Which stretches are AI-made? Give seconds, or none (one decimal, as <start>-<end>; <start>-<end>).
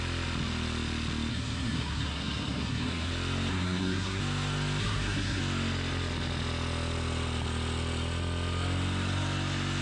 1.3-3.1; 3.5-4.2; 4.8-5.4